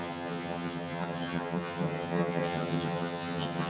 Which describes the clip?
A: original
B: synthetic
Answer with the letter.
B